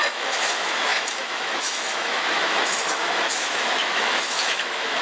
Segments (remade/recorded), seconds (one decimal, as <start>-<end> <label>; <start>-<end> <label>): 0.0-5.0 remade